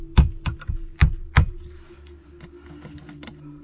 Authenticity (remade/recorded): recorded